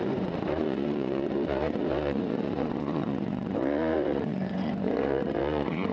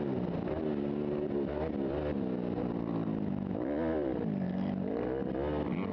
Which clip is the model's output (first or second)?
first